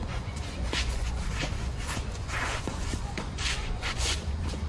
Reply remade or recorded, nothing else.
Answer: remade